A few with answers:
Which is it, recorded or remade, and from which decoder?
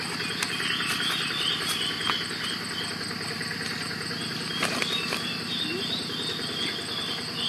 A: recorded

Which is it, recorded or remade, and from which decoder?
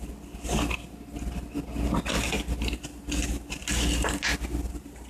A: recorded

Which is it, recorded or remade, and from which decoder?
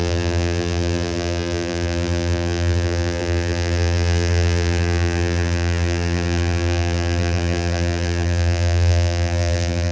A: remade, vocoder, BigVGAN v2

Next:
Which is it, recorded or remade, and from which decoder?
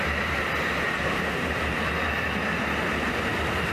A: recorded